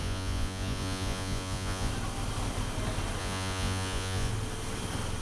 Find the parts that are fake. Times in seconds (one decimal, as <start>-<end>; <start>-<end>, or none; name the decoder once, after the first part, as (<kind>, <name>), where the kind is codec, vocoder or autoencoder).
0.0-1.9 (vocoder, Vocos); 3.2-4.3